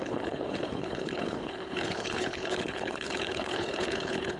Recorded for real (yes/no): no